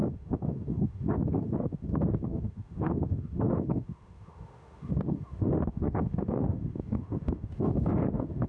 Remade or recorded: remade